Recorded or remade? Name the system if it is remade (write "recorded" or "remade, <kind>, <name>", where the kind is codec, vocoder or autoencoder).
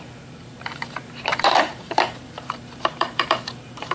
remade, vocoder, BigVGAN v2